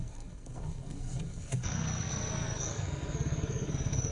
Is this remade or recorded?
remade